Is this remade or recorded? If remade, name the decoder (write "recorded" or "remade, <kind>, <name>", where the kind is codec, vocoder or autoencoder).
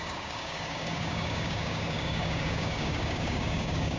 remade, codec, DAC